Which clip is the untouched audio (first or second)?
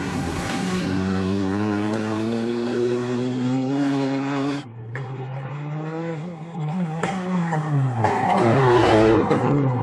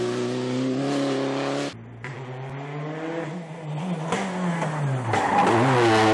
second